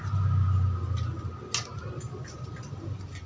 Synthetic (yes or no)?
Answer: no